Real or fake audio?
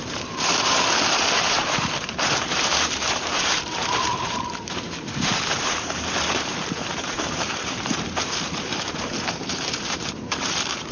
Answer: fake